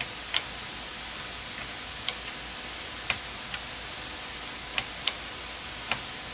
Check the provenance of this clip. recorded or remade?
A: recorded